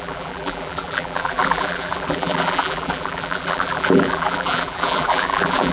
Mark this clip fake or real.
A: fake